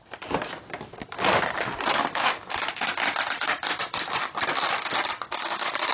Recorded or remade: recorded